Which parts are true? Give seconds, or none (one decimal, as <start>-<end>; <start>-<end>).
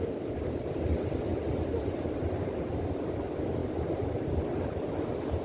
0.0-5.4